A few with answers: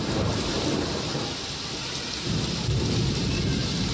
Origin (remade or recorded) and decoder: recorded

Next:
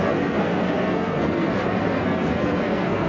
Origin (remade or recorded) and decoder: remade, codec, SNAC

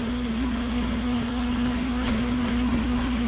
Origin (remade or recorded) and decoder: remade, codec, SNAC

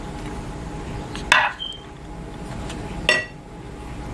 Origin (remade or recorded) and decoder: recorded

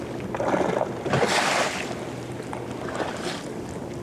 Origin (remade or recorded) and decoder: recorded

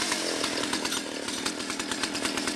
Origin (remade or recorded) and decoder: recorded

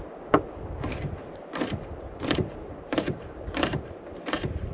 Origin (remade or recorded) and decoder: remade, vocoder, BigVGAN v2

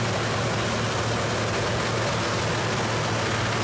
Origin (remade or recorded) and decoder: recorded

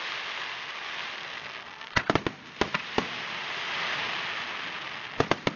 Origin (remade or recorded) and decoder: recorded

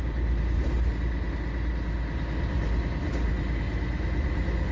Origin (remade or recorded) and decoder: recorded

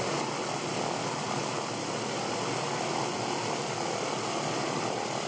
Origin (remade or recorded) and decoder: recorded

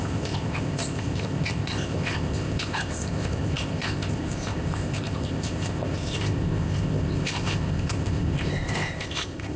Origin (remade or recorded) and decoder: remade, codec, ZipCodec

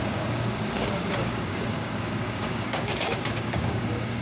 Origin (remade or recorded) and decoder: remade, codec, DAC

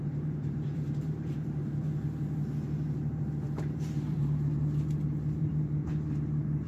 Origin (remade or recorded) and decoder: remade, vocoder, BigVGAN v2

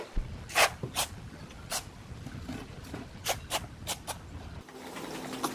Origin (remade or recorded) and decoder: recorded